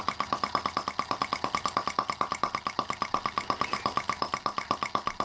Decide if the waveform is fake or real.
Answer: real